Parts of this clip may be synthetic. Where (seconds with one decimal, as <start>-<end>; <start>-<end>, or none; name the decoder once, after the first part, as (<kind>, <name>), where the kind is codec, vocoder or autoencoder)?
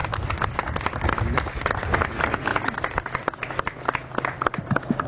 none